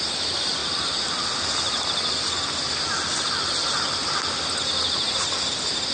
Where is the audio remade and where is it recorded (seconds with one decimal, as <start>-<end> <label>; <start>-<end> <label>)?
0.0-5.9 recorded